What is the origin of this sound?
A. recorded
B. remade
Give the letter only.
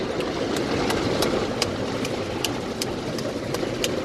B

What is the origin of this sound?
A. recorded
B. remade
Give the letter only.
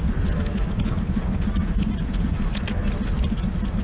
A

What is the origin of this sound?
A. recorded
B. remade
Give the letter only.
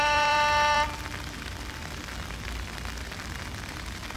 B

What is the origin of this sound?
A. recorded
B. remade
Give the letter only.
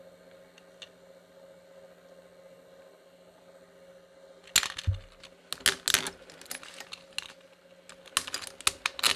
A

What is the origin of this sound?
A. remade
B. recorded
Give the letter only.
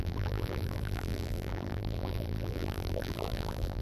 A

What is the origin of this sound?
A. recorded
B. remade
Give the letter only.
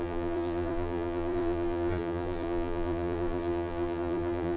B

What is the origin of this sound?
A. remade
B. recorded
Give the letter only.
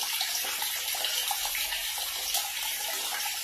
A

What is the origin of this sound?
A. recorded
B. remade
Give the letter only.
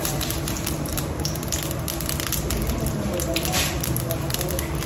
B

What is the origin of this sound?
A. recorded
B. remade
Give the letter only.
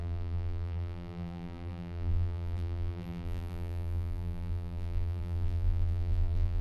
B